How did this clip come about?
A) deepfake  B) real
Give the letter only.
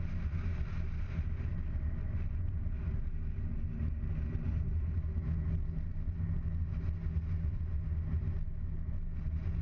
B